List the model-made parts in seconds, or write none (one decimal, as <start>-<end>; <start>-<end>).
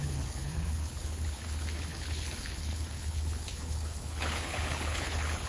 0.0-5.5